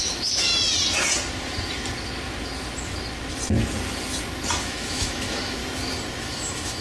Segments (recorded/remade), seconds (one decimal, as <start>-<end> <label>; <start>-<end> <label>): 0.0-0.5 remade; 0.5-4.6 recorded; 4.6-5.6 remade; 5.6-6.2 recorded; 6.2-6.8 remade